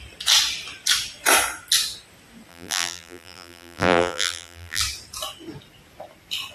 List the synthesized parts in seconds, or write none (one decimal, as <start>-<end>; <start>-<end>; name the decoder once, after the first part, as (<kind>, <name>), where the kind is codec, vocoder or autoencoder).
2.5-4.8 (vocoder, BigVGAN v2)